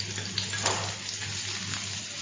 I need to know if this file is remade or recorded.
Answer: recorded